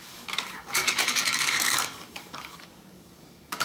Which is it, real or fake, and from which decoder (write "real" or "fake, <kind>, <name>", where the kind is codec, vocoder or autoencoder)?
fake, codec, DAC